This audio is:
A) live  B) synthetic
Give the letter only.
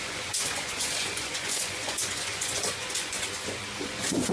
B